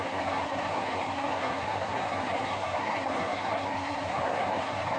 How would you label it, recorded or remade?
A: remade